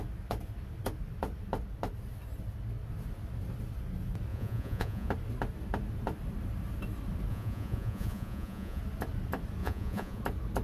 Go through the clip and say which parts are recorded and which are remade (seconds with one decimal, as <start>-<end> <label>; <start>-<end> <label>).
0.0-4.3 recorded; 4.3-5.1 remade; 5.1-7.3 recorded; 7.3-8.8 remade; 8.8-9.6 recorded; 9.6-10.2 remade; 10.2-10.6 recorded